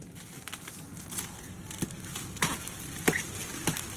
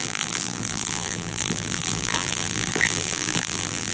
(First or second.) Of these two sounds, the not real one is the second